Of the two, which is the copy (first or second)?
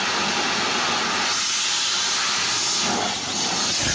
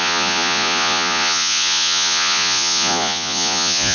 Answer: second